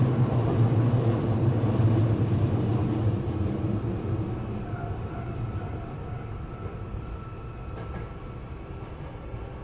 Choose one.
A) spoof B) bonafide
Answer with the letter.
B